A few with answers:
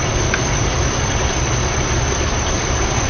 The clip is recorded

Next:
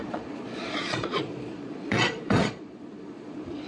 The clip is remade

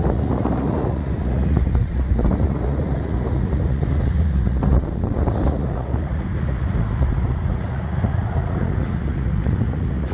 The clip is remade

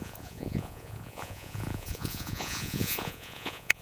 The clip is remade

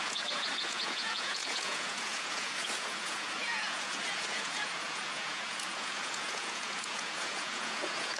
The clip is remade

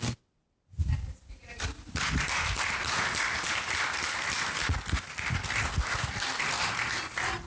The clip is recorded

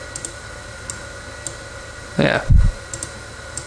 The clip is recorded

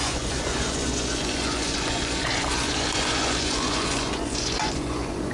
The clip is remade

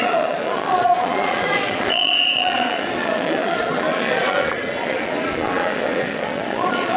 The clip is remade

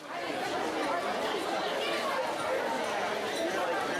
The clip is recorded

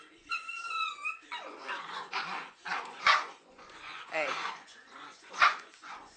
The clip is remade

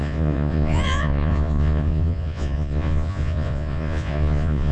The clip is remade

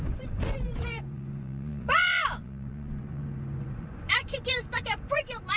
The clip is remade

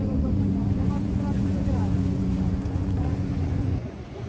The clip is remade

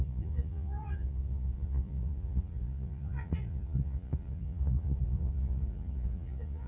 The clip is remade